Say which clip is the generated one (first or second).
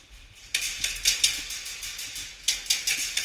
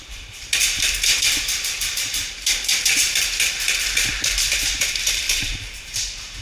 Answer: second